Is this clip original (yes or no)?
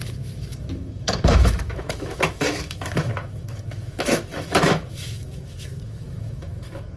no